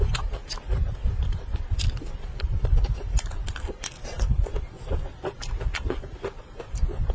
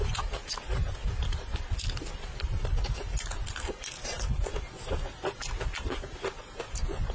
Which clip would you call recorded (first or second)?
second